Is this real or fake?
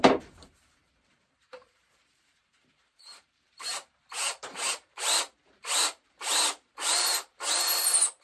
fake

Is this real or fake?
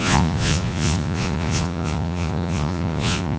fake